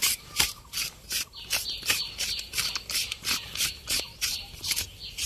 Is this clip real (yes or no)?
no